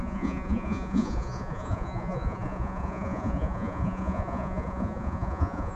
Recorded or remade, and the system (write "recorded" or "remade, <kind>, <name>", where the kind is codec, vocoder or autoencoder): remade, vocoder, Vocos